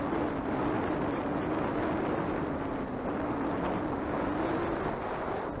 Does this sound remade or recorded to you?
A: recorded